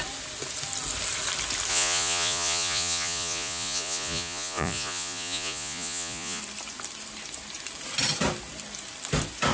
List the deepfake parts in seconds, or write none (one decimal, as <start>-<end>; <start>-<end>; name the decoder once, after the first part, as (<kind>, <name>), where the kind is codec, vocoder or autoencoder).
1.7-6.4 (vocoder, Vocos)